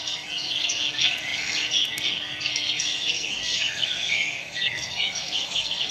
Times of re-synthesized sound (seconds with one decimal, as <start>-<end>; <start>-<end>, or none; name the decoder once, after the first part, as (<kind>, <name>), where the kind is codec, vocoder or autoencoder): 0.0-5.9 (codec, SNAC)